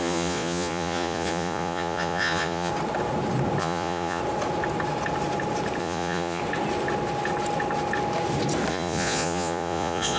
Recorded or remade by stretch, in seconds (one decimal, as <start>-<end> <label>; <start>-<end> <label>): 0.0-2.7 remade; 2.7-3.6 recorded; 3.6-4.2 remade; 4.2-5.8 recorded; 5.8-6.4 remade; 6.4-8.7 recorded; 8.7-10.2 remade